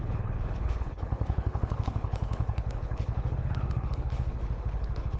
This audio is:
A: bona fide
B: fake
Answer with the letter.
B